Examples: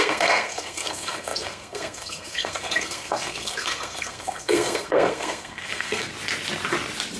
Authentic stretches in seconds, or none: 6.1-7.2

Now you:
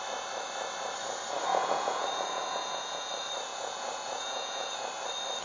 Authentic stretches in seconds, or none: 0.0-1.5; 3.1-3.5; 4.9-5.4

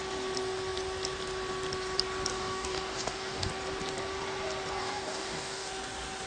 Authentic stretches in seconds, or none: 0.0-2.3; 3.5-4.8; 5.7-6.3

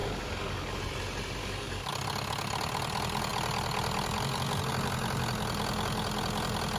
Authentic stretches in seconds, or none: 0.8-1.4; 1.9-6.8

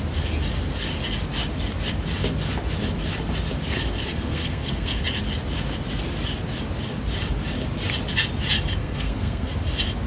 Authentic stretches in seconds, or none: 0.0-4.1; 5.0-8.8; 9.5-10.1

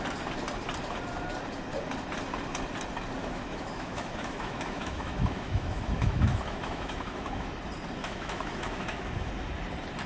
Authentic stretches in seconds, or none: 0.0-3.2; 7.5-8.0; 9.3-10.1